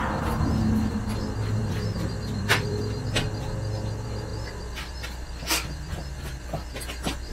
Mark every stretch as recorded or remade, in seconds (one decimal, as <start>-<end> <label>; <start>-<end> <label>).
0.0-1.6 recorded; 1.6-2.8 remade; 2.8-4.3 recorded; 4.3-6.8 remade; 6.8-7.3 recorded